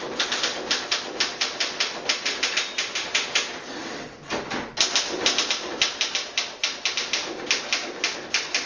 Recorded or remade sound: recorded